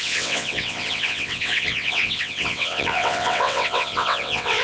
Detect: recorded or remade remade